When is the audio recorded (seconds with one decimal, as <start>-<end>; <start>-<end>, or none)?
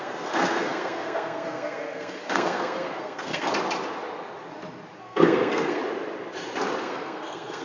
3.5-5.0; 5.8-6.8